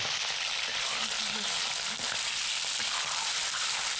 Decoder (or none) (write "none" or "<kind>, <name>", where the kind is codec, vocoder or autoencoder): vocoder, BigVGAN v2